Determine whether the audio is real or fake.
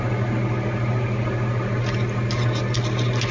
real